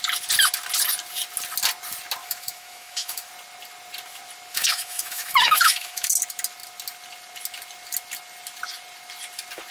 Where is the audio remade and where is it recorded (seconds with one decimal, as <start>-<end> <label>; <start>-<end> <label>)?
0.0-2.2 recorded; 2.2-3.3 remade; 3.3-4.5 recorded; 4.5-6.1 remade; 6.1-9.7 recorded